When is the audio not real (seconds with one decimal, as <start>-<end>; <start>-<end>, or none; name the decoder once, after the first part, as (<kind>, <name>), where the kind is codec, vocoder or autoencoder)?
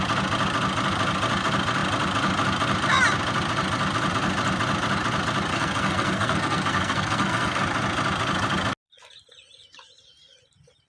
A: 5.5-7.6 (codec, SNAC)